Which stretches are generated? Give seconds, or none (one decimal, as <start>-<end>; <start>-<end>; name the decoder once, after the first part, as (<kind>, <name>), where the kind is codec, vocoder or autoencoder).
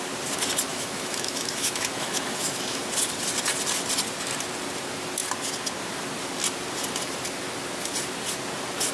0.7-2.8 (autoencoder, DAC-VAE)